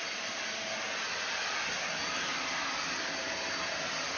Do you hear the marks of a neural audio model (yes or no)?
no